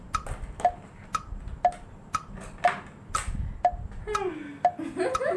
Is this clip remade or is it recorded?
recorded